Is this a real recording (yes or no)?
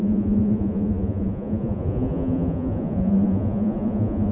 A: no